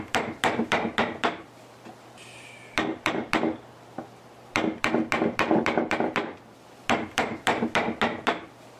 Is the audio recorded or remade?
recorded